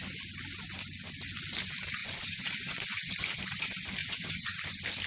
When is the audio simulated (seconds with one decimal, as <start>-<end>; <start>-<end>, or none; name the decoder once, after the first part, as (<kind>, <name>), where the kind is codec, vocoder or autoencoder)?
2.0-3.1 (vocoder, Vocos); 4.0-4.5